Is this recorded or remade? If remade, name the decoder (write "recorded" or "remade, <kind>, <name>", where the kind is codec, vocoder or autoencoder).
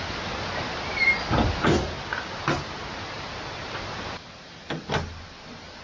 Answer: recorded